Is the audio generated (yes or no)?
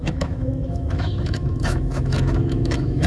yes